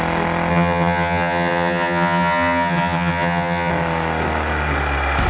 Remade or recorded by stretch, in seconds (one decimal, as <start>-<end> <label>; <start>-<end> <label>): 0.0-0.5 recorded; 0.5-3.7 remade; 3.7-5.3 recorded